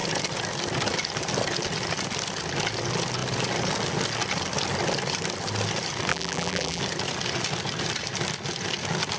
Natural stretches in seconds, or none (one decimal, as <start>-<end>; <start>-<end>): 0.0-6.1; 6.8-9.2